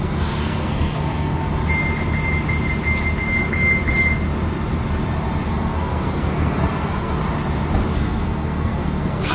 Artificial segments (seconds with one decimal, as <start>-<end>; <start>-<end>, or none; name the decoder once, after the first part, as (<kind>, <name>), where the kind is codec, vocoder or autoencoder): 0.0-1.4 (codec, SNAC); 5.5-7.2; 7.9-9.3